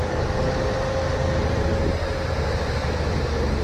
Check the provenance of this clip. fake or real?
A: real